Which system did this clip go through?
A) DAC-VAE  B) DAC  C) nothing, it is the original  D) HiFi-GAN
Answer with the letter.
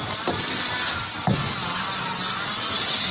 C